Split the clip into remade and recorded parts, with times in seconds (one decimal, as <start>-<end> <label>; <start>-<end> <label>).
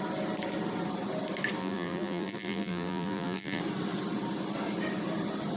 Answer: 0.0-1.6 recorded; 1.6-3.6 remade; 3.6-5.6 recorded